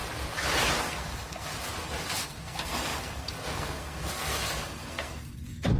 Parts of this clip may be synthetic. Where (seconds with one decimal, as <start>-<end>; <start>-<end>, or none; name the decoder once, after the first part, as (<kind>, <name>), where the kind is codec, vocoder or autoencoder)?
0.8-1.5 (codec, SNAC); 2.2-5.8